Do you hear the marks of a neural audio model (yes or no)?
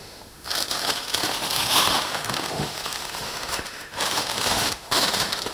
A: yes